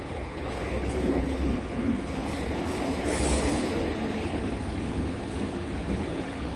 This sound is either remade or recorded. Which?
remade